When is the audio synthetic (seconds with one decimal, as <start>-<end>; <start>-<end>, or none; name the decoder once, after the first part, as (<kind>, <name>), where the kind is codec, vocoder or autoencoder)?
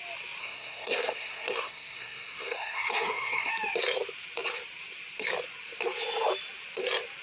0.4-3.5 (codec, SNAC)